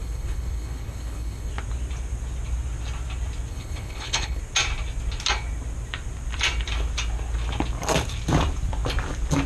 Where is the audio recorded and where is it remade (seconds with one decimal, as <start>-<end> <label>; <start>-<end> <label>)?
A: 0.0-1.5 remade; 1.5-3.5 recorded; 3.5-4.4 remade; 4.4-9.5 recorded